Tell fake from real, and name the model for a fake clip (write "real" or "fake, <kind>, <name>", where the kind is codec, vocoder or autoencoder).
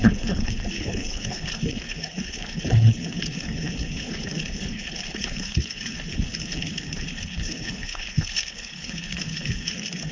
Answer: fake, codec, HILCodec